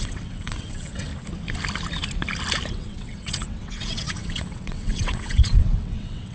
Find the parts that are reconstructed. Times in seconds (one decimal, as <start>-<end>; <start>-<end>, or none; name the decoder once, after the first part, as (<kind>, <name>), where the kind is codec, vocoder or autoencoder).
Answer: 0.0-1.1 (vocoder, WaveNeXt); 2.7-6.3